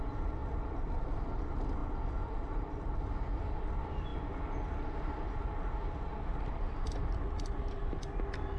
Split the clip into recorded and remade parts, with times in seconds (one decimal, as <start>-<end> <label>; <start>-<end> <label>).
0.0-1.8 recorded; 1.8-3.4 remade; 3.4-4.1 recorded; 4.1-5.4 remade; 5.4-8.6 recorded